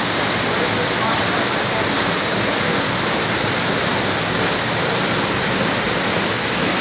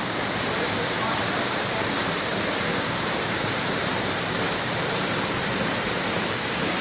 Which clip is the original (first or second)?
first